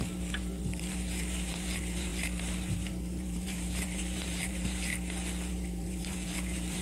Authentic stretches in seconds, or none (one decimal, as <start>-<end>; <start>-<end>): 4.9-5.5